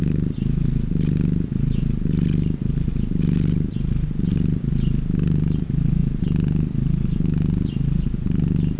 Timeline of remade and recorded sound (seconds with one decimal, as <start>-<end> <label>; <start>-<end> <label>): 0.0-8.8 recorded

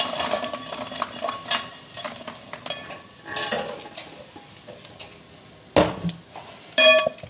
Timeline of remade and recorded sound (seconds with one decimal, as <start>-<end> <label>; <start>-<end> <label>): 0.0-7.3 recorded

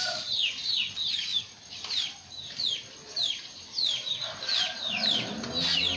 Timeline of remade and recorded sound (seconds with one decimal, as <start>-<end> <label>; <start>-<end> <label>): 0.0-6.0 recorded

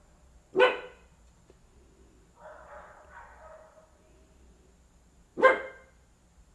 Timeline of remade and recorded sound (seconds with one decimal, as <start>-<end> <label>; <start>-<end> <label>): 0.0-6.5 recorded